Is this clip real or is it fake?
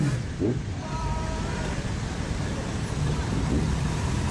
fake